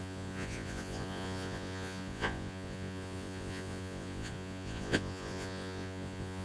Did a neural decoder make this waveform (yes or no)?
yes